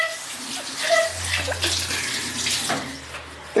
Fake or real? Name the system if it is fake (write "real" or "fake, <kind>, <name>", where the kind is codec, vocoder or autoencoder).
real